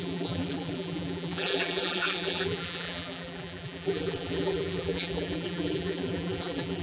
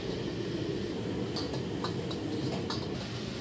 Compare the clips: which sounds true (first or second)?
second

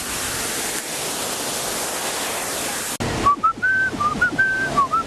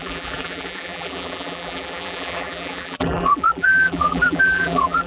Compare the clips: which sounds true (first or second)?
first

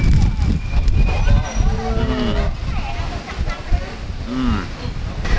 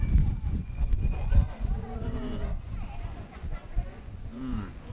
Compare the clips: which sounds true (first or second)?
first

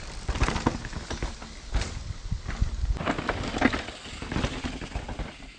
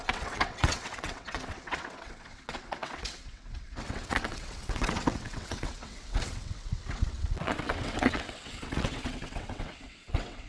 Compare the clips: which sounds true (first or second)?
first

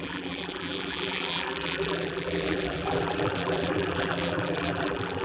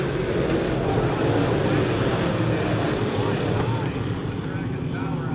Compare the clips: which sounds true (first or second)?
second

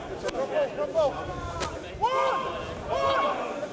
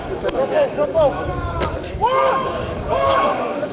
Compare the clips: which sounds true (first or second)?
first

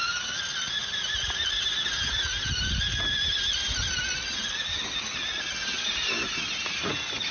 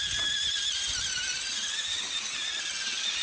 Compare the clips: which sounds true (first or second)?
first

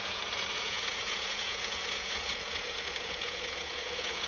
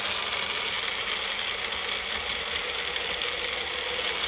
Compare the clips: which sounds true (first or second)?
second